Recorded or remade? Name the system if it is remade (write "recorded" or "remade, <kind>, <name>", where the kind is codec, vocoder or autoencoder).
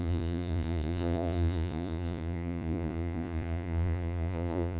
remade, vocoder, Vocos